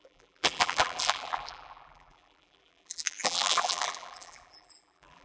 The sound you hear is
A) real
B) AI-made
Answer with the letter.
B